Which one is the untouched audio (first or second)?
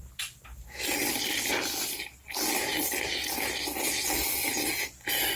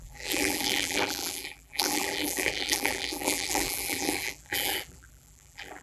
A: first